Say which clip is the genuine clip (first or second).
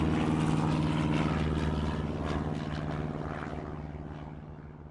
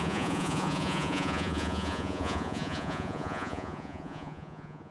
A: first